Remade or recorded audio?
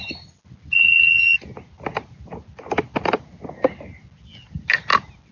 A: recorded